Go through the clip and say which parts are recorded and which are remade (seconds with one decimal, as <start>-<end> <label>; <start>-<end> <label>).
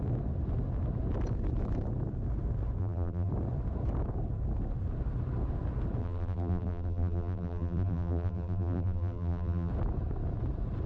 0.0-2.8 recorded; 2.8-3.3 remade; 3.3-6.0 recorded; 6.0-9.7 remade; 9.7-10.9 recorded